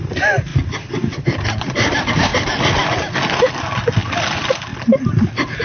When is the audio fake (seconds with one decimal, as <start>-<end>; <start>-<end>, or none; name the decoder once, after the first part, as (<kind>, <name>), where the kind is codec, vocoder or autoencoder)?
0.0-0.5 (vocoder, BigVGAN v2); 1.6-4.7